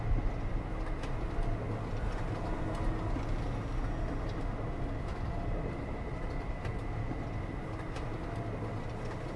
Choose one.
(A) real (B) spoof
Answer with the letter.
A